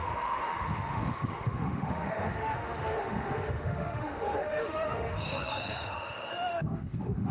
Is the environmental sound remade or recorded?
remade